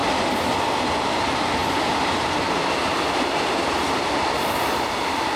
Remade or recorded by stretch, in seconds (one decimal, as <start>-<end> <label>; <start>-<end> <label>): 0.0-1.0 recorded; 1.0-1.6 remade; 1.6-3.3 recorded; 3.3-5.4 remade